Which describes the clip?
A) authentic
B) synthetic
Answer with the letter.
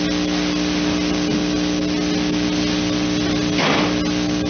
A